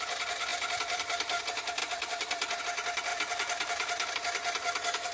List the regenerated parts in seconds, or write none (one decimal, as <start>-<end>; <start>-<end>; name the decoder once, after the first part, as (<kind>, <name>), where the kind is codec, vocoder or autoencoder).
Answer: 0.5-1.4 (vocoder, BigVGAN v2); 1.8-2.6; 3.1-4.1